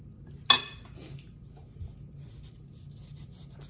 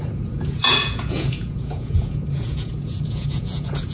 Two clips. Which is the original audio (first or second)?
first